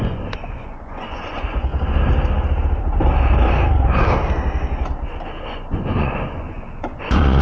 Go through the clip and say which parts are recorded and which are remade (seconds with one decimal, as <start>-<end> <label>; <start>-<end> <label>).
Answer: 0.0-1.7 remade; 1.7-5.5 recorded; 5.5-7.4 remade